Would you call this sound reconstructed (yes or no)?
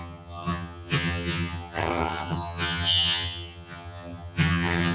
yes